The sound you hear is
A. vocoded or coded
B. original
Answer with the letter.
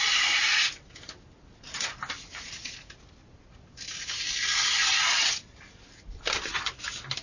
B